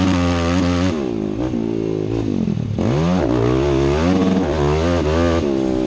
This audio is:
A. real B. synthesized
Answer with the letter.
A